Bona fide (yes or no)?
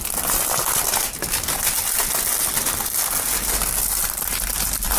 yes